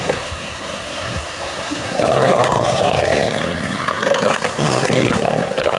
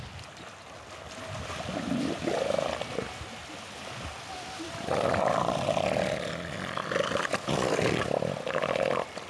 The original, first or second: second